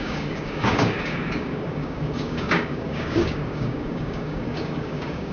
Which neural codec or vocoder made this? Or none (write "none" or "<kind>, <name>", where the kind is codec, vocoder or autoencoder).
codec, DAC